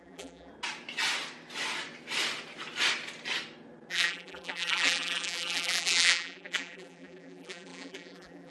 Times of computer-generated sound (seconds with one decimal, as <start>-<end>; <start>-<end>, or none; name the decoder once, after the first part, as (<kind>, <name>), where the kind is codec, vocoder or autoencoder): 0.0-0.5 (vocoder, BigVGAN v2); 3.9-8.5